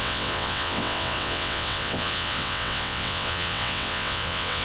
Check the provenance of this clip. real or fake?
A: fake